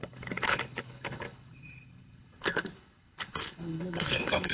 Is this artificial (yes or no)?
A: yes